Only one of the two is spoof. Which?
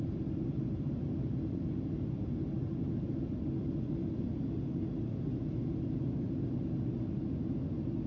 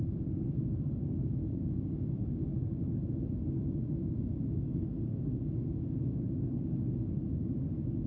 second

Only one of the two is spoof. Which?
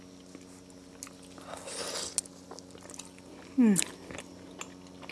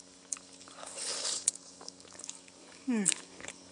second